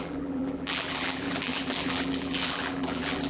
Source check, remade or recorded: remade